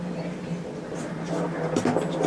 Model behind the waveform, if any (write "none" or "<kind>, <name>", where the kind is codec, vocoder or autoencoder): none